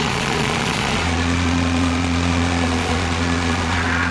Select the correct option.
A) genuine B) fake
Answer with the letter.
B